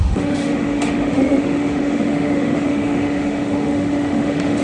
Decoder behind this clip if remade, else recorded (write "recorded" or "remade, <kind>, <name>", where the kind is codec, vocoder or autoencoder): remade, autoencoder, DAC-VAE